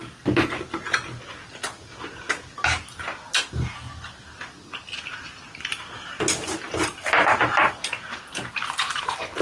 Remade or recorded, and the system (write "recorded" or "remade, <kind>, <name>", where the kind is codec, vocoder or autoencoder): recorded